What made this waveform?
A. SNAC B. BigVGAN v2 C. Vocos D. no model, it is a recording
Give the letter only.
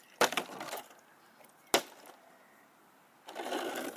D